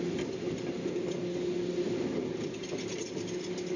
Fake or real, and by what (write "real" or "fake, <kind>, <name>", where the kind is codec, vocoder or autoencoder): real